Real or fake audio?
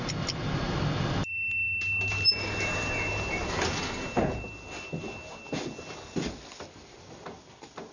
real